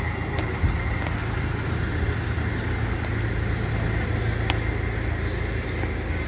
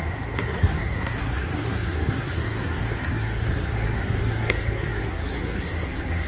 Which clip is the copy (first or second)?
second